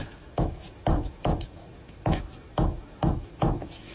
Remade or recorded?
remade